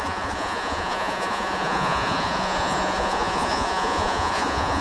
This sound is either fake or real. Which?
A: fake